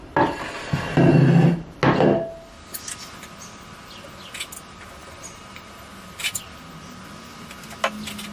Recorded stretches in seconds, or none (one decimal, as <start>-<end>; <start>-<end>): 0.0-5.0; 6.4-8.3